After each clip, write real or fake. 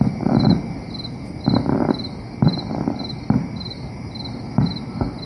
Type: real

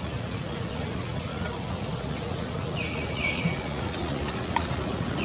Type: fake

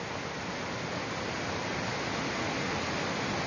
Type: real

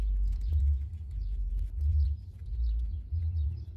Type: fake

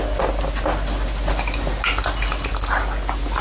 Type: real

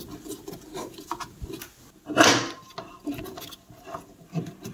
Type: real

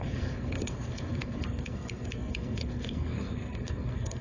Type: fake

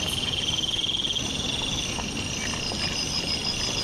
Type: real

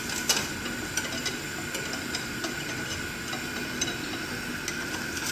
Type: real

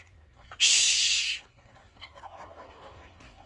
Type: fake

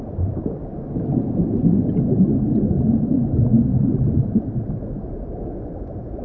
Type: real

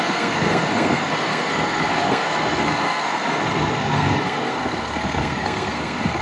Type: fake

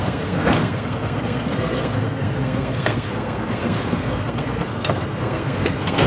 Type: fake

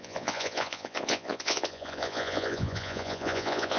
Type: fake